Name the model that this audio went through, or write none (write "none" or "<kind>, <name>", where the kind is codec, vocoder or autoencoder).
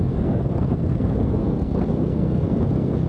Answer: codec, SNAC